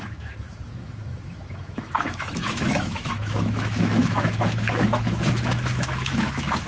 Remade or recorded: remade